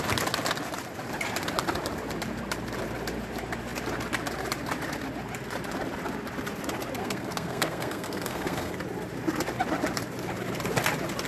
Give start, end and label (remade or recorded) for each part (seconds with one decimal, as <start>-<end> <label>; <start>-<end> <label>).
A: 0.0-7.0 recorded; 7.0-8.7 remade; 8.7-11.3 recorded